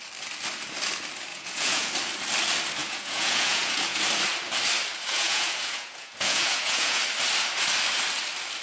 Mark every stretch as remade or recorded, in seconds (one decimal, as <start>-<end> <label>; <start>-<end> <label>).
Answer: 0.0-1.3 recorded; 1.3-1.9 remade; 1.9-2.8 recorded; 2.8-4.0 remade; 4.0-5.1 recorded; 5.1-7.0 remade; 7.0-8.6 recorded